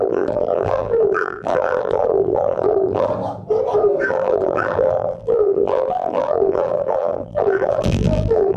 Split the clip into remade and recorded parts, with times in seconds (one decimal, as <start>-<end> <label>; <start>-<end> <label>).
0.0-3.1 remade; 3.1-4.1 recorded; 4.1-8.6 remade